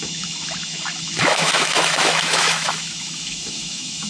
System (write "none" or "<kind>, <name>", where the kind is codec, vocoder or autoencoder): autoencoder, DAC-VAE